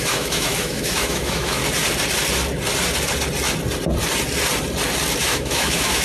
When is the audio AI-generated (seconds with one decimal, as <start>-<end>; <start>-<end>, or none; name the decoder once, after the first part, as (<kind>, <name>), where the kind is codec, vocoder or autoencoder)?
0.0-1.6 (autoencoder, DAC-VAE); 5.2-6.0